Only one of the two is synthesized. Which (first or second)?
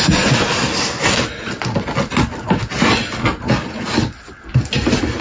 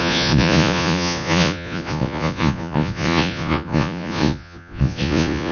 second